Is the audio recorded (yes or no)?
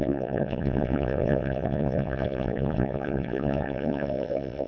no